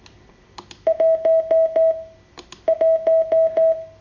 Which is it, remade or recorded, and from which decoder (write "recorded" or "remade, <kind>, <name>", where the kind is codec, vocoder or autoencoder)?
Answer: recorded